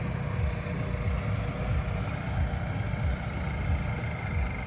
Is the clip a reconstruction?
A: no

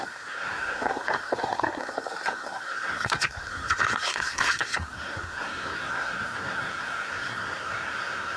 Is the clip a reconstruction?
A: yes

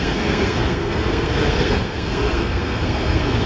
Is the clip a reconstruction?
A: yes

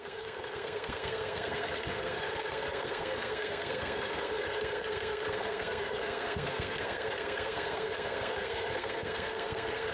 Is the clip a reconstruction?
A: yes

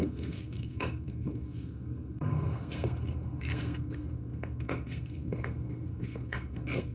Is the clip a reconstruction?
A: yes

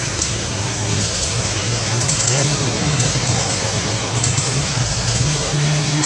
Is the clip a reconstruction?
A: yes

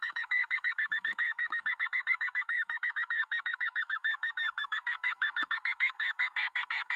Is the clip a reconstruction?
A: yes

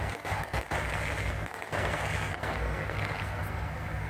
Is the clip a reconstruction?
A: yes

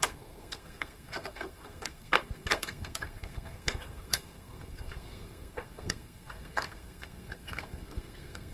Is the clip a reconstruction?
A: yes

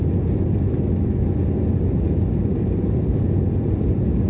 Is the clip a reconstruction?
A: no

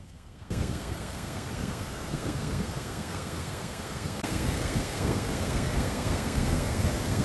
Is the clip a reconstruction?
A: yes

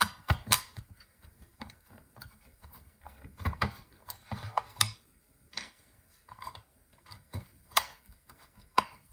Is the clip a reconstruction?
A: yes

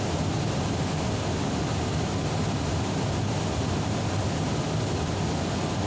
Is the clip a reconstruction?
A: no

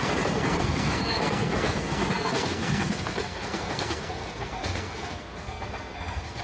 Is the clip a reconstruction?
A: yes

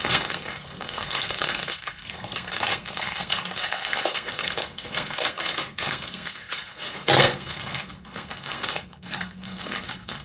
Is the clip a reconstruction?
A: yes